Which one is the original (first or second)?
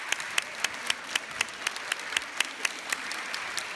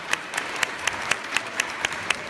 first